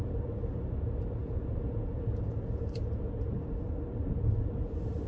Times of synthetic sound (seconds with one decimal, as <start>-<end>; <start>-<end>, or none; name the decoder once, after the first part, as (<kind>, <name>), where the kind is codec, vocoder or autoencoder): 1.2-2.1 (vocoder, Vocos)